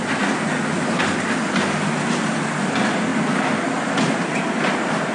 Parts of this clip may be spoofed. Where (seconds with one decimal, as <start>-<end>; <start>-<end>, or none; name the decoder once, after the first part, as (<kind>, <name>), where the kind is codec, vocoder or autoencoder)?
none